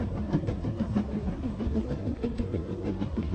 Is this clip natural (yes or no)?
no